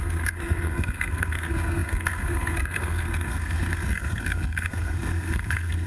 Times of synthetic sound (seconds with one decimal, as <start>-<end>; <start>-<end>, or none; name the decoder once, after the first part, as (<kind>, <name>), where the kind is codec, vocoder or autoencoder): 0.0-5.9 (codec, SNAC)